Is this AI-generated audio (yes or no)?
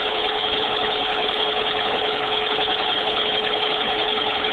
yes